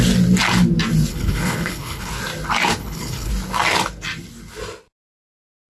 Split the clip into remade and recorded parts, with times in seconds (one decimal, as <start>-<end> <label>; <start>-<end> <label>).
0.0-1.1 recorded; 1.1-2.1 remade; 2.1-2.8 recorded; 2.8-3.3 remade; 3.3-5.7 recorded